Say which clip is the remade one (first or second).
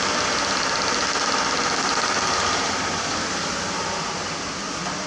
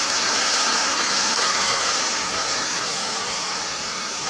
second